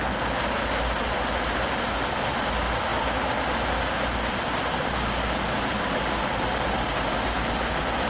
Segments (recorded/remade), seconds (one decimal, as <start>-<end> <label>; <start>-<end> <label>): 0.0-8.1 recorded